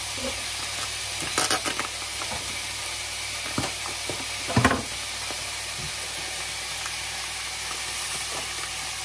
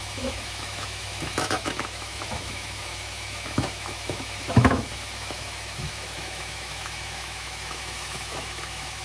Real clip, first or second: first